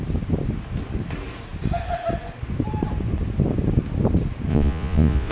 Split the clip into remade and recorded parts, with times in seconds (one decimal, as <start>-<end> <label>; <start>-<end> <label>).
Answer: 0.0-4.5 recorded; 4.5-5.3 remade